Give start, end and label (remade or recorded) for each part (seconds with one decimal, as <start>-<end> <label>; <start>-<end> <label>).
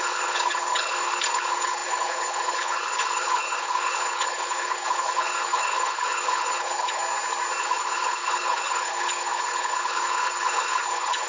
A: 0.0-7.0 remade; 7.0-7.6 recorded; 7.6-11.3 remade